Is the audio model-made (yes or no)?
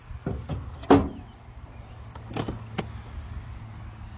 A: no